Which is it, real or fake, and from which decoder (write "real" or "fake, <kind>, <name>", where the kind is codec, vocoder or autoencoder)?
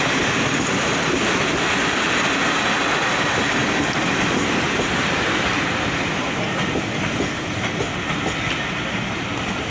real